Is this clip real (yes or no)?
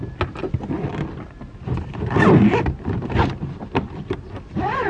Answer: yes